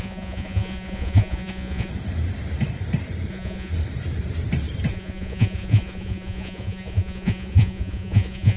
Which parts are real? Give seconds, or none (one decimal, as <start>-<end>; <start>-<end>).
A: 1.9-3.3; 3.7-4.9